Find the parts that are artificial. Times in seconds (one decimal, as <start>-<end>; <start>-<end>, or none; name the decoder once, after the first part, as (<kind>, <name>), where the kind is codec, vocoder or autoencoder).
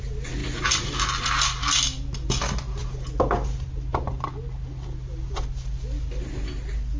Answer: none